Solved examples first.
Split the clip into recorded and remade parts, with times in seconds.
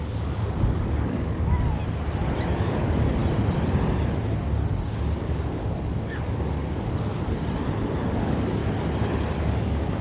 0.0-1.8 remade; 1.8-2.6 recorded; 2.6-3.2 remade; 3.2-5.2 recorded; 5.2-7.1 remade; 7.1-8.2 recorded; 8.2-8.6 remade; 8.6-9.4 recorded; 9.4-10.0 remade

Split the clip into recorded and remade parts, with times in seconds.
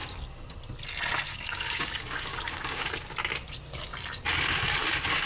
0.0-1.3 recorded; 1.3-2.9 remade; 2.9-5.3 recorded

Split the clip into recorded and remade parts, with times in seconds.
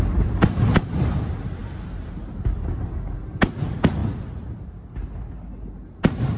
0.0-6.4 recorded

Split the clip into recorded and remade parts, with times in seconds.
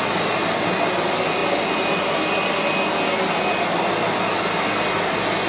0.0-5.5 recorded